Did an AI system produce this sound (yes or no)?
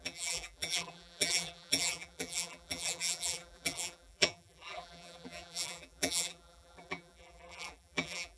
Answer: yes